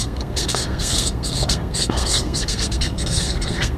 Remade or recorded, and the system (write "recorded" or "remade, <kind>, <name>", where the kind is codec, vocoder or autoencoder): remade, codec, SNAC